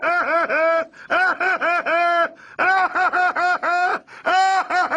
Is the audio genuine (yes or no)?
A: yes